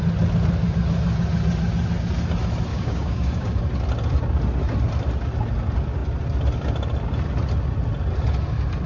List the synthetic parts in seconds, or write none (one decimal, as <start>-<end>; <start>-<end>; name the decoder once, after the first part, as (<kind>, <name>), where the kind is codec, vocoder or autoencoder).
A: 2.7-3.6 (codec, DAC)